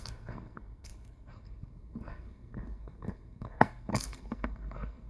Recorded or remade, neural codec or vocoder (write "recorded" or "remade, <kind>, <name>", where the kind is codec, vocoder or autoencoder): remade, codec, SNAC